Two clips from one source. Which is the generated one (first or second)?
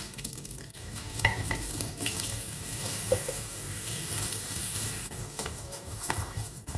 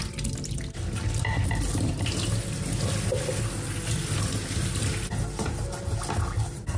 first